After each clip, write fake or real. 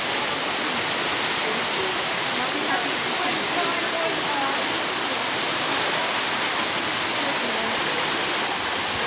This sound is real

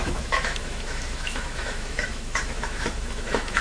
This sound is fake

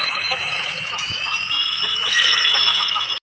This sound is fake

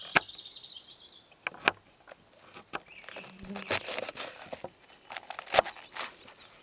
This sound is real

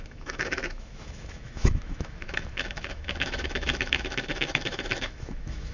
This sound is fake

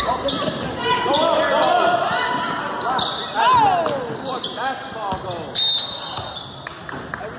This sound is real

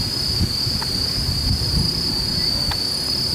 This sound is real